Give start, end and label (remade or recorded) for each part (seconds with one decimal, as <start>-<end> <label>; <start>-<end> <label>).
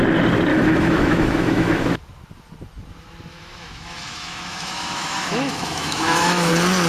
0.0-0.5 recorded; 0.5-2.0 remade; 2.0-3.3 recorded; 3.3-6.5 remade; 6.5-6.9 recorded